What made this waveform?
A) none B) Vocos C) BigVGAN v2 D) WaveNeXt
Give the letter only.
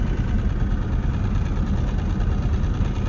C